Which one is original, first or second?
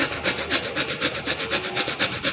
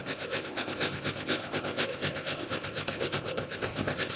first